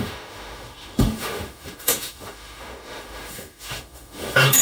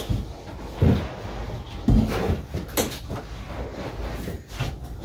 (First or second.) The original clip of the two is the second